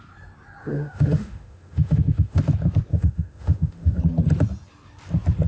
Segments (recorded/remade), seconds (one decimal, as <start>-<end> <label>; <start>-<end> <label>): 0.0-0.6 recorded; 0.6-2.4 remade; 2.4-2.9 recorded; 2.9-4.0 remade; 4.0-5.5 recorded